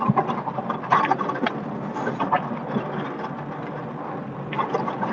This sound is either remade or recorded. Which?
recorded